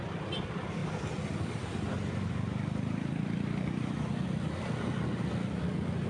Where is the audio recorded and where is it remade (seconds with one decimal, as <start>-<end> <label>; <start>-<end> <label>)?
0.0-0.8 remade; 0.8-2.3 recorded; 2.3-6.1 remade